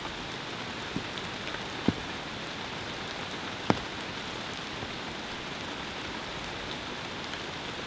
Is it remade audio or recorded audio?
recorded